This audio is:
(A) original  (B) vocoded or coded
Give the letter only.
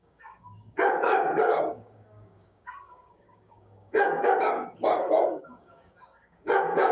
B